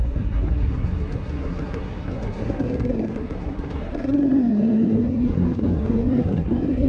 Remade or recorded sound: remade